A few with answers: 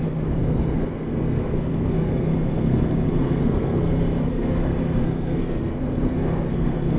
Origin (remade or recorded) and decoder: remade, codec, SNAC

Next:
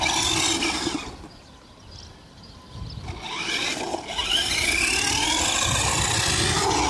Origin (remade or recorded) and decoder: recorded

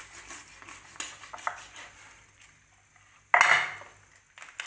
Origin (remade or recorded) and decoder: recorded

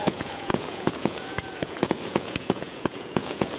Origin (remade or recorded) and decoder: remade, vocoder, Vocos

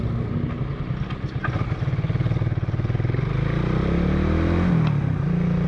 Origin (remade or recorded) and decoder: recorded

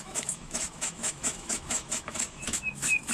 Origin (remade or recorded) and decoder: remade, autoencoder, DAC-VAE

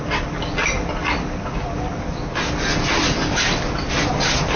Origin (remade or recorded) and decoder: recorded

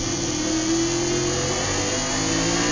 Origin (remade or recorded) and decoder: recorded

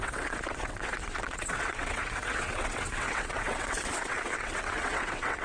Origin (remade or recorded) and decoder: remade, vocoder, WaveNeXt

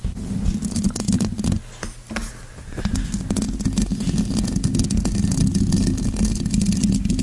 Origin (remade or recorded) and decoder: recorded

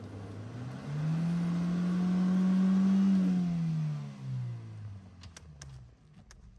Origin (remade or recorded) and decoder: recorded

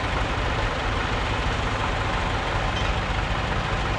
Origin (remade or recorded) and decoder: recorded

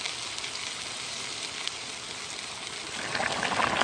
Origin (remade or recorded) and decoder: recorded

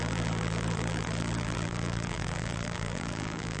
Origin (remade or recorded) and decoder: remade, vocoder, BigVGAN v2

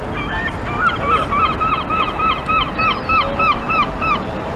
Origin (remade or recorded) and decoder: recorded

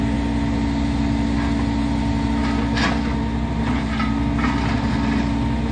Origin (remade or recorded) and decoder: recorded